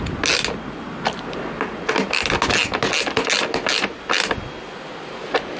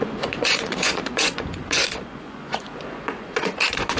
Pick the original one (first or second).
first